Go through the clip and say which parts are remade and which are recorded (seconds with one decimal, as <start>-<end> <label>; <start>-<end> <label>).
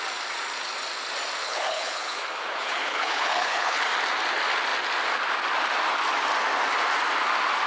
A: 0.0-1.4 recorded; 1.4-3.8 remade; 3.8-7.7 recorded